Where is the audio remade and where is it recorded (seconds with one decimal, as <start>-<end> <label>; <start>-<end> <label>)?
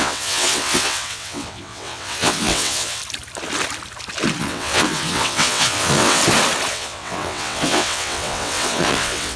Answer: 0.0-3.0 remade; 3.0-4.4 recorded; 4.4-6.2 remade; 6.2-6.7 recorded; 6.7-9.4 remade